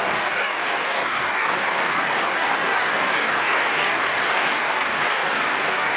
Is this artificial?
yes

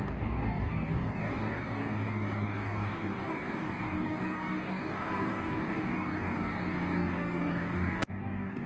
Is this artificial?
yes